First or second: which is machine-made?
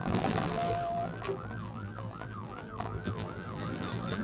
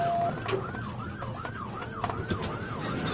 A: first